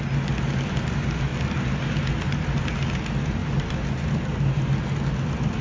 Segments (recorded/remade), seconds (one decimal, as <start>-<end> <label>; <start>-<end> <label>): 0.0-3.4 recorded; 3.4-4.7 remade; 4.7-5.6 recorded